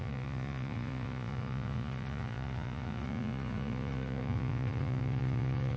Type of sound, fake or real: fake